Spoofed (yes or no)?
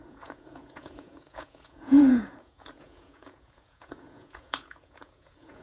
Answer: yes